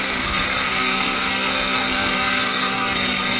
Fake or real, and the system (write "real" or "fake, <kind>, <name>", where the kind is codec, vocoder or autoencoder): fake, codec, SNAC